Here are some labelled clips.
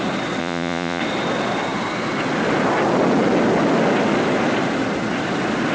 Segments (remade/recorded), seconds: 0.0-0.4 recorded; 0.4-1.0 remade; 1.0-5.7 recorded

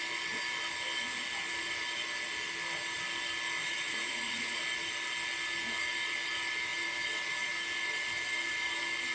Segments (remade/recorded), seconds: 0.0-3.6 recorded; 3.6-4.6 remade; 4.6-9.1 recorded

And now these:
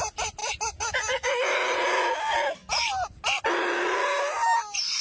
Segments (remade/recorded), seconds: 0.0-5.0 recorded